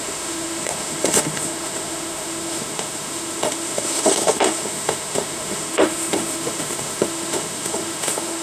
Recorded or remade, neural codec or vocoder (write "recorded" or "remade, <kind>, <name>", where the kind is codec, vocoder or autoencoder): remade, autoencoder, DAC-VAE